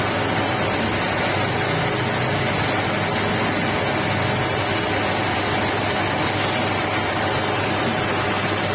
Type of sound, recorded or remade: recorded